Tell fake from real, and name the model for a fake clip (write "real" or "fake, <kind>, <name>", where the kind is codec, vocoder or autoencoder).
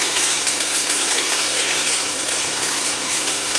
fake, codec, SNAC